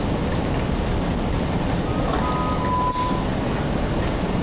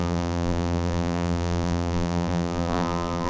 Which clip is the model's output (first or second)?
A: second